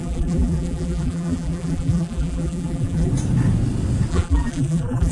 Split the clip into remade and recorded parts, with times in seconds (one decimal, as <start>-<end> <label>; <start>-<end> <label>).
0.0-3.1 remade; 3.1-4.1 recorded; 4.1-5.1 remade